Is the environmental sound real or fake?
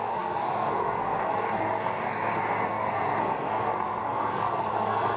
fake